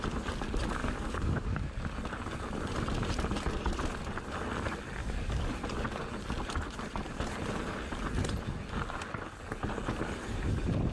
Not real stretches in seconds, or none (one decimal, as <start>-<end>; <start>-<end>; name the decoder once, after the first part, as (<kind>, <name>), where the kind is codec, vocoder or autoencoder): 0.8-1.7 (codec, DAC); 5.0-5.5